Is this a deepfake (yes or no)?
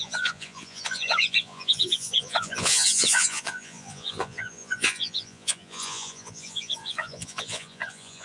yes